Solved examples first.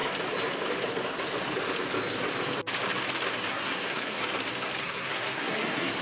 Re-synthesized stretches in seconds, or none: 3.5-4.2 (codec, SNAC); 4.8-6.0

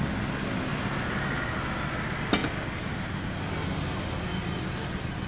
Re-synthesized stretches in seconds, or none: none

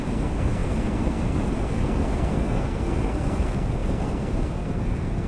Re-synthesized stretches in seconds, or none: 0.0-5.3 (codec, SNAC)

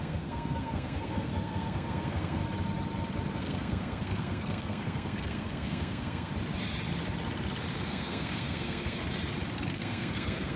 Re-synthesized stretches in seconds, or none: 0.0-2.4 (codec, SNAC); 3.4-6.3; 7.7-9.0; 9.7-10.6

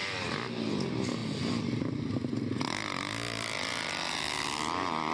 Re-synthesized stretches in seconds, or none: none

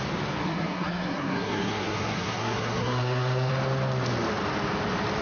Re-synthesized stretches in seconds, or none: 0.4-3.5 (codec, SNAC)

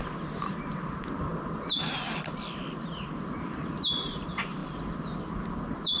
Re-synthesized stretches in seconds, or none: none

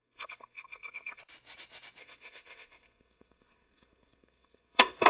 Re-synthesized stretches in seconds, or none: 0.0-1.2 (codec, SNAC); 2.0-5.1